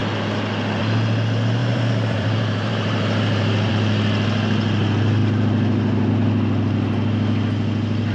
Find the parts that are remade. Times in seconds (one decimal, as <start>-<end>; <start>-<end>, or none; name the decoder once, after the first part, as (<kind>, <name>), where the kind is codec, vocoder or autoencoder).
1.6-3.7 (vocoder, BigVGAN v2)